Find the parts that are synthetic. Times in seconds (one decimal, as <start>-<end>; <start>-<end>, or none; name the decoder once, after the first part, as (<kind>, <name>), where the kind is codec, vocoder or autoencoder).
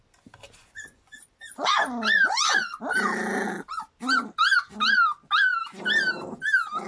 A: 0.6-2.8 (vocoder, Vocos)